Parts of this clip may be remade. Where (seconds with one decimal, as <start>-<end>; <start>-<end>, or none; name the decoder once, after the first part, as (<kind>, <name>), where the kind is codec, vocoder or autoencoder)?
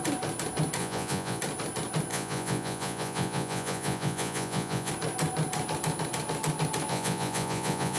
0.8-1.4 (vocoder, Vocos); 2.1-4.9; 6.9-8.0